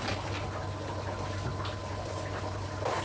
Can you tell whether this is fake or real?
real